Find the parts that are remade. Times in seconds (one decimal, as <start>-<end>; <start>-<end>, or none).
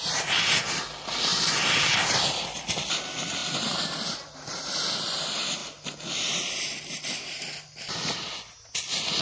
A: 1.3-2.2; 3.4-4.5